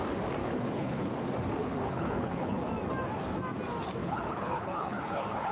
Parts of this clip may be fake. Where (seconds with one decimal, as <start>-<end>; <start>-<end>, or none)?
0.4-1.1; 1.6-2.7; 4.0-5.5